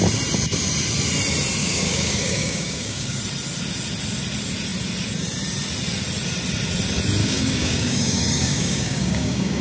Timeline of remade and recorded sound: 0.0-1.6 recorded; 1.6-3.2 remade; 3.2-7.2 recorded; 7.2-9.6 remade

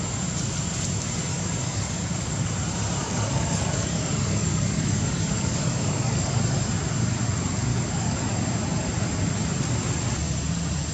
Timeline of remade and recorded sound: 0.0-1.3 recorded; 1.3-2.5 remade; 2.5-3.0 recorded; 3.0-6.4 remade; 6.4-7.7 recorded; 7.7-8.2 remade; 8.2-10.9 recorded

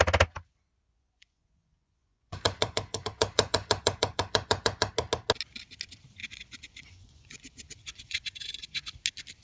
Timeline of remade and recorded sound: 0.0-0.9 recorded; 0.9-4.9 remade; 4.9-6.2 recorded; 6.2-8.9 remade; 8.9-9.4 recorded

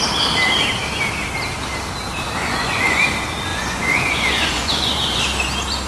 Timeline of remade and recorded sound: 0.0-2.4 recorded; 2.4-3.0 remade; 3.0-3.5 recorded; 3.5-5.2 remade; 5.2-5.9 recorded

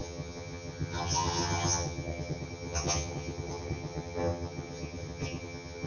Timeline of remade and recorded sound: 0.0-5.9 remade

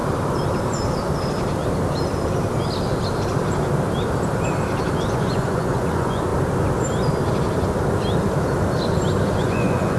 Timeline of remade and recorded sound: 0.0-5.1 recorded; 5.1-6.3 remade; 6.3-9.4 recorded; 9.4-10.0 remade

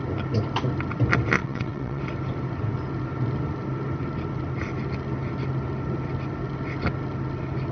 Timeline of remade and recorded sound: 0.0-1.4 recorded; 1.4-2.0 remade; 2.0-7.7 recorded